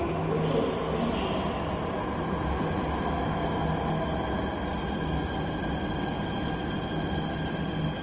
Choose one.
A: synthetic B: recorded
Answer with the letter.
B